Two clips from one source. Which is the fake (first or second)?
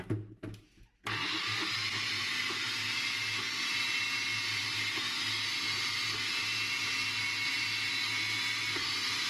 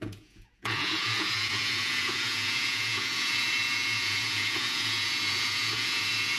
second